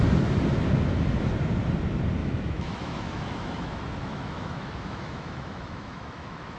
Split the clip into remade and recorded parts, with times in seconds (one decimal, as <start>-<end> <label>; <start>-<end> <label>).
0.0-2.2 recorded; 2.2-6.6 remade